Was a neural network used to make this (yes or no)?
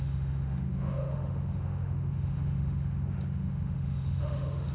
yes